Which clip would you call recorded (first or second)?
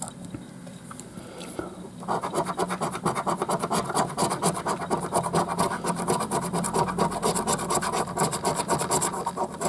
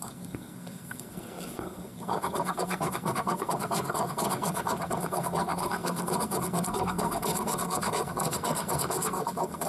first